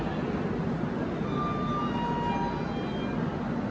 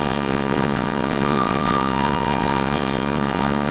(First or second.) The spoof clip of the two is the second